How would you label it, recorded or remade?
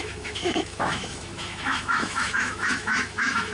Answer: remade